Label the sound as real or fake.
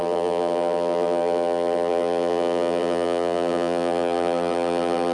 fake